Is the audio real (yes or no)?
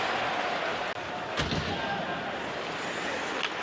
yes